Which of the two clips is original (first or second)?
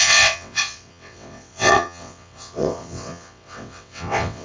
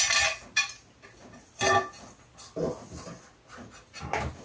second